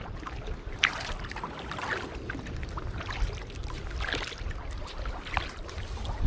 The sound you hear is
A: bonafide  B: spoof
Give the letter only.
A